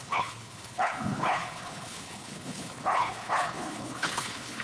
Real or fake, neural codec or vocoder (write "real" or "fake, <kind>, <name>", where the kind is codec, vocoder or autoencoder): fake, codec, HILCodec